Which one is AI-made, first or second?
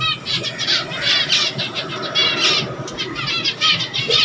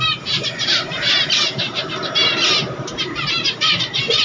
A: second